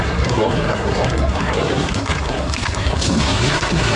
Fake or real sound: fake